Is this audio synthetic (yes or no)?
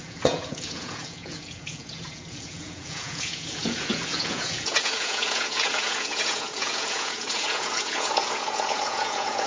yes